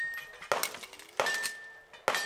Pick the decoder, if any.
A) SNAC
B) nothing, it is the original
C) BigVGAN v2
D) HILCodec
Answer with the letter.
B